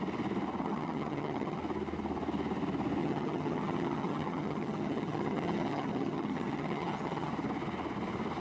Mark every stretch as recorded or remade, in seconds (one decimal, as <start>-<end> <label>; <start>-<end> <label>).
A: 0.0-0.6 recorded; 0.6-1.6 remade; 1.6-3.0 recorded; 3.0-7.3 remade; 7.3-8.4 recorded